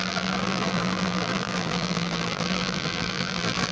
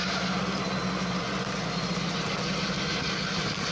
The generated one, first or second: first